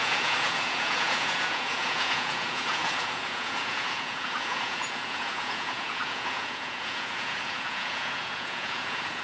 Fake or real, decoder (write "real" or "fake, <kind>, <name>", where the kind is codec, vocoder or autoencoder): fake, vocoder, Vocos